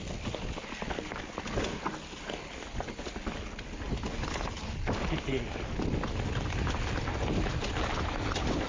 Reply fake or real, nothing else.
real